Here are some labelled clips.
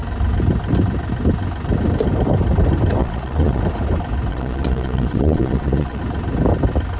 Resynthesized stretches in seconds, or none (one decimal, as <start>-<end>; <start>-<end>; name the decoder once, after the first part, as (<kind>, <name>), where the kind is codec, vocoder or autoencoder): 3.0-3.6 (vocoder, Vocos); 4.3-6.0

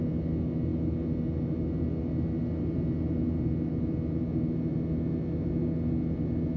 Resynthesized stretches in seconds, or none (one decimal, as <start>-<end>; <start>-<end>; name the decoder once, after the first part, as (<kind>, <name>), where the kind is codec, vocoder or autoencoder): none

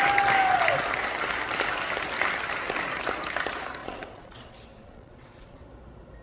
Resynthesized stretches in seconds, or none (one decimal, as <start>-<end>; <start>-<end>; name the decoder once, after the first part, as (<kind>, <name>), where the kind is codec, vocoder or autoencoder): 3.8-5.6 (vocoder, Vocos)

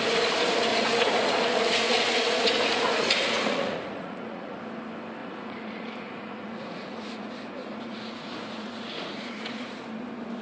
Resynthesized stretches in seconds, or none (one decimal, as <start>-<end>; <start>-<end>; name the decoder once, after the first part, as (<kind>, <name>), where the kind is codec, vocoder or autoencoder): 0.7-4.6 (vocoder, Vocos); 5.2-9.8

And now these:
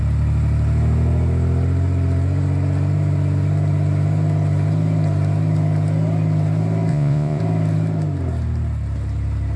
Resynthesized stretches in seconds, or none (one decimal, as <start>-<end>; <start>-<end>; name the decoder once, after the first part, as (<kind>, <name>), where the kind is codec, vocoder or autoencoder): 6.9-7.4 (vocoder, Vocos)

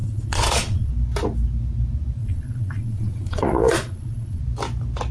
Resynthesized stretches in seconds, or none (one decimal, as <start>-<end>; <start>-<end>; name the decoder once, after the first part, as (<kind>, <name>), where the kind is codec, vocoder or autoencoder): 0.0-0.9 (vocoder, Vocos); 2.2-4.4

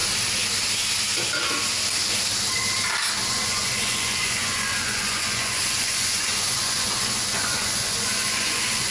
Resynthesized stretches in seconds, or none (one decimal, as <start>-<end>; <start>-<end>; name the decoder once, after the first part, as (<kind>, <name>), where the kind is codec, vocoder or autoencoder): 3.3-8.9 (vocoder, Vocos)